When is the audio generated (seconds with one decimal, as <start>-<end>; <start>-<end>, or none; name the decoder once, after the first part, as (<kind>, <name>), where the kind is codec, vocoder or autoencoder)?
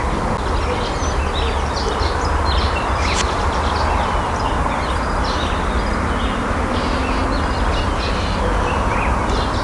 none